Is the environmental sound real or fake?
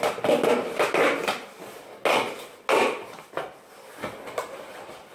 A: real